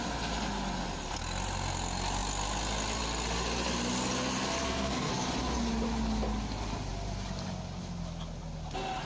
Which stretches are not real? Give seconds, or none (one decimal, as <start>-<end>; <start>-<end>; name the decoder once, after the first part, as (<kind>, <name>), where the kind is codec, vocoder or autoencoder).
4.6-5.1 (codec, SNAC)